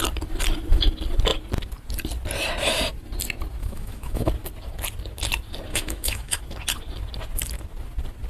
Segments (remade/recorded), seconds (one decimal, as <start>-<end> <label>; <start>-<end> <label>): 0.0-3.6 recorded; 3.6-4.3 remade; 4.3-5.7 recorded; 5.7-6.4 remade; 6.4-8.3 recorded